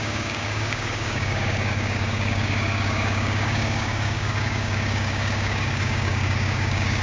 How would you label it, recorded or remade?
remade